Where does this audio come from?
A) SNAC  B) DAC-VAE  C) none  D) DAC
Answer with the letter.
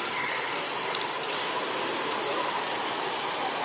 C